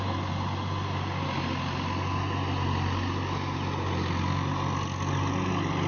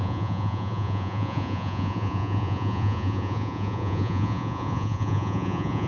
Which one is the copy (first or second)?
second